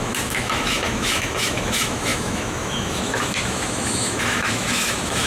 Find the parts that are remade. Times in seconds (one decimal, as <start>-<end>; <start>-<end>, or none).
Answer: 0.0-5.3